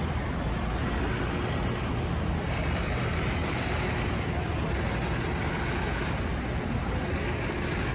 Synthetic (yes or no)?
no